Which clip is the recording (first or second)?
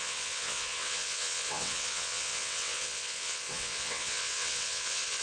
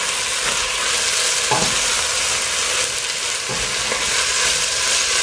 second